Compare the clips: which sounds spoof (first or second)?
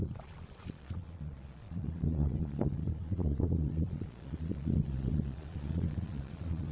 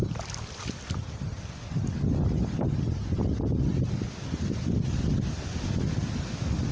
first